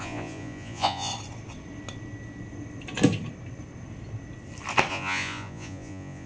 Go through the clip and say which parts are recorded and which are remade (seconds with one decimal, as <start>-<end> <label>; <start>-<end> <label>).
0.0-1.1 remade; 1.1-4.9 recorded; 4.9-6.3 remade